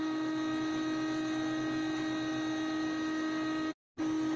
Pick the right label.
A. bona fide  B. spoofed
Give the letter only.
A